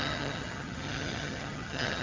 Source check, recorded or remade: remade